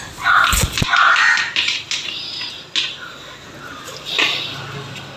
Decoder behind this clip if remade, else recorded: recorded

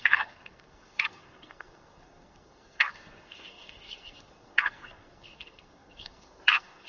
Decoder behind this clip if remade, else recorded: remade, codec, SNAC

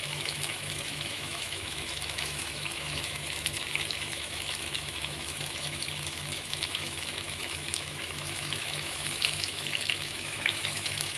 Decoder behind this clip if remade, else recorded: remade, autoencoder, DAC-VAE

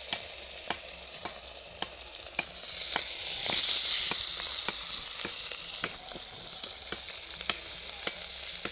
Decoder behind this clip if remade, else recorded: recorded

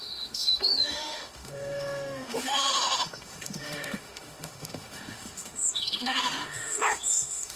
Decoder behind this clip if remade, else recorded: remade, autoencoder, DAC-VAE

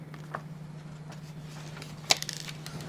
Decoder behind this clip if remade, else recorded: recorded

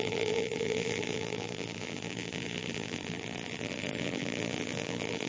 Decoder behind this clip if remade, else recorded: remade, vocoder, BigVGAN v2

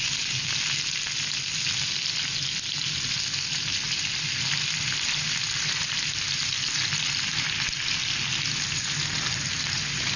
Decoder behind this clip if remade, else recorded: recorded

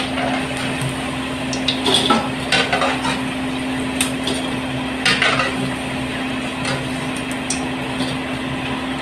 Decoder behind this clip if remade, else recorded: recorded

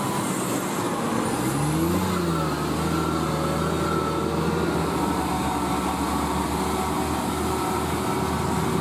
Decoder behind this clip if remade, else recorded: recorded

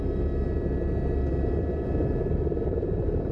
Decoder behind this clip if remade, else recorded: recorded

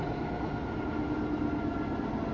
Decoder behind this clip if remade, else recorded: recorded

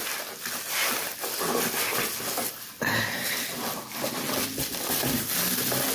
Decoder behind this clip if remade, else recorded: recorded